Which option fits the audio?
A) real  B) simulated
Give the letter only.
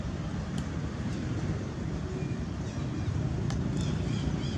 A